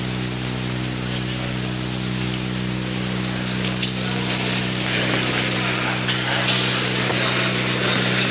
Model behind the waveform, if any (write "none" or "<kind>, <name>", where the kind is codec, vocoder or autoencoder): none